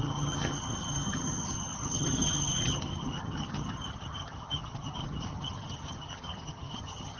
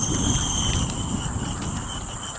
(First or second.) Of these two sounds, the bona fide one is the second